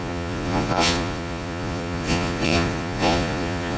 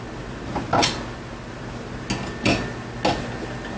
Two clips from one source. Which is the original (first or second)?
second